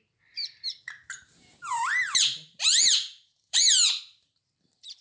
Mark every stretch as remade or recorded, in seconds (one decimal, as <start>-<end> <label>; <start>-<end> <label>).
0.0-5.0 remade